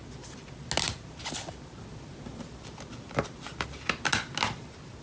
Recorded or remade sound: recorded